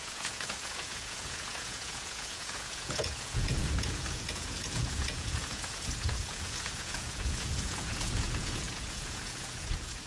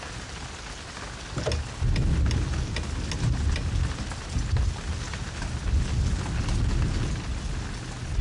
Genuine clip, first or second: second